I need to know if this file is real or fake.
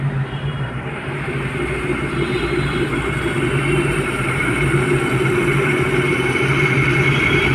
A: fake